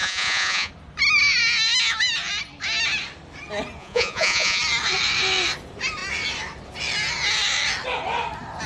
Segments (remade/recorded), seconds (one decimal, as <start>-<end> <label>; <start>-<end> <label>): 0.0-0.7 remade; 0.7-3.8 recorded; 3.8-4.6 remade; 4.6-8.7 recorded